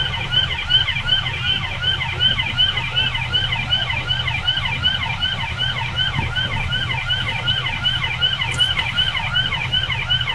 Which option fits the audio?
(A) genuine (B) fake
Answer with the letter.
A